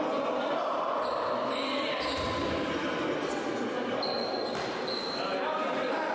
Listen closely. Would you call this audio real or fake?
real